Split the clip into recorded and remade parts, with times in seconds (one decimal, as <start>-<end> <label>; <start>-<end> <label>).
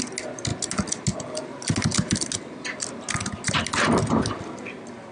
0.0-5.1 recorded